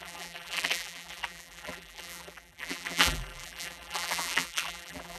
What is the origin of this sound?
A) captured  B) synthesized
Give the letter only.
B